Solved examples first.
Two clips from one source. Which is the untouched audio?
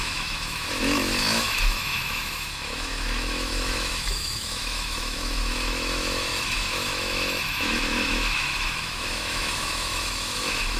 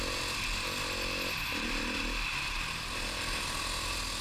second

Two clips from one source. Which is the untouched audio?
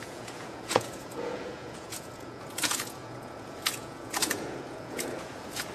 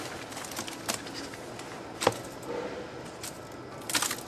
second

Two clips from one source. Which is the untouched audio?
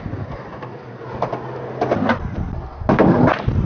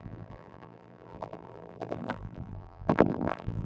first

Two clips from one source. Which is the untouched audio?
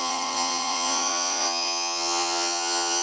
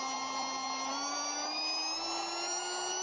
second